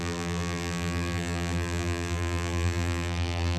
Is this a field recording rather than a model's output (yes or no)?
no